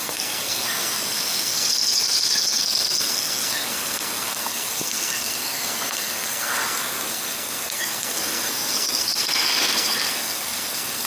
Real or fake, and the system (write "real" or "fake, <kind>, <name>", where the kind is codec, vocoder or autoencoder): fake, codec, SNAC